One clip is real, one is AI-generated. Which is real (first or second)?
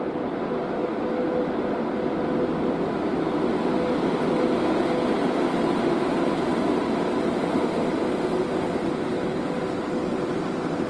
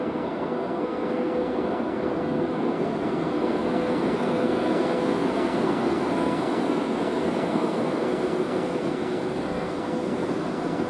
first